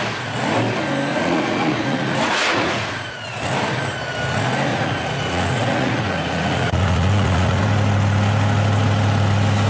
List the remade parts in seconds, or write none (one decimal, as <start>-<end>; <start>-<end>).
1.1-3.4; 4.7-7.6